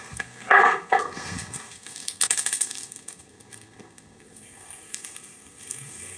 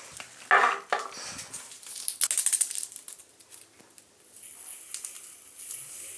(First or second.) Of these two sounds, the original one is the second